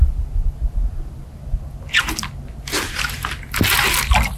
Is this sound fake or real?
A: real